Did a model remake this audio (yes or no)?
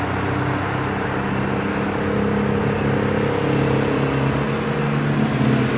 no